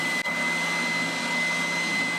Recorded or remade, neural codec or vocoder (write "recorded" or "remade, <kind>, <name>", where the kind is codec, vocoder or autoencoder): recorded